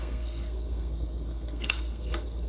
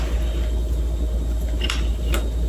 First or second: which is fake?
first